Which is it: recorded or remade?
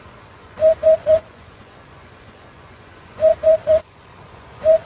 remade